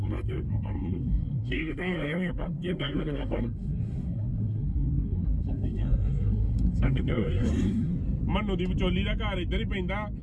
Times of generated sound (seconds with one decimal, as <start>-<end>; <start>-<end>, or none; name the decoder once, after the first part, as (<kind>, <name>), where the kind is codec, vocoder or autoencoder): 0.0-7.9 (codec, SNAC)